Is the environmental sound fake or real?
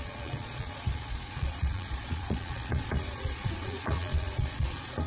fake